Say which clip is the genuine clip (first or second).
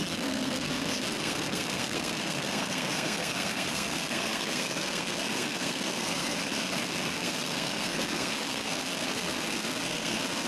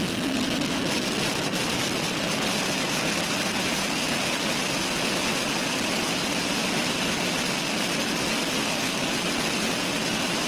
second